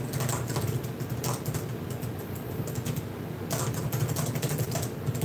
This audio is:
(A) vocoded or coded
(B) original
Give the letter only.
B